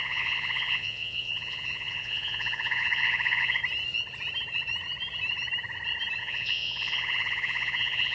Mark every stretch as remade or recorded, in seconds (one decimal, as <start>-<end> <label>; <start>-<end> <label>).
0.0-3.6 remade; 3.6-6.2 recorded; 6.2-8.1 remade